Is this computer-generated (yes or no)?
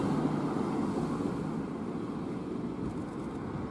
no